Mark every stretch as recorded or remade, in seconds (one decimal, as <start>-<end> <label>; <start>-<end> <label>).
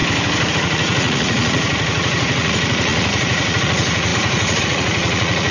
0.0-0.5 recorded; 0.5-5.5 remade